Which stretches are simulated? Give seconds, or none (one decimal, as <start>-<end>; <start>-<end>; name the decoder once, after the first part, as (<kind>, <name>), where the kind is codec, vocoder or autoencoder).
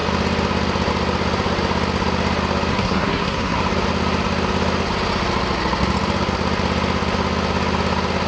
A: 2.7-3.6 (codec, SNAC)